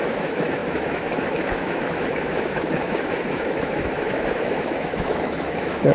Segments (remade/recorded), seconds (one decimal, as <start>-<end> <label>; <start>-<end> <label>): 0.0-5.9 remade